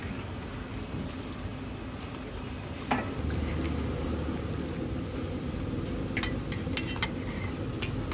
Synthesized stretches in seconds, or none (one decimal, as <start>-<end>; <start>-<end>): none